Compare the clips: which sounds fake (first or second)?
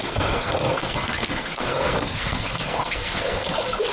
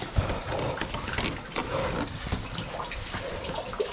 first